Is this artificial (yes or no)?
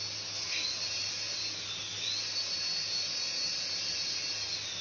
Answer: no